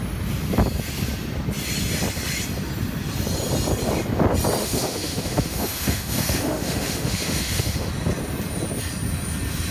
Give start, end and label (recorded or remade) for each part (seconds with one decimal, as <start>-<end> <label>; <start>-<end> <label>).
0.0-4.6 recorded; 4.6-7.9 remade; 7.9-9.7 recorded